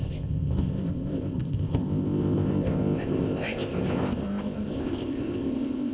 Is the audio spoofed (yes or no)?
yes